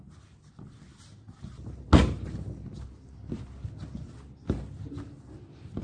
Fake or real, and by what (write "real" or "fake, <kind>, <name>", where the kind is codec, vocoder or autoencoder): real